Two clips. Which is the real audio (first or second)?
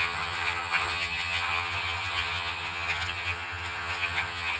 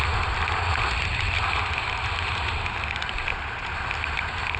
second